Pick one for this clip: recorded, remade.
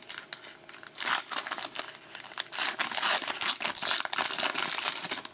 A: recorded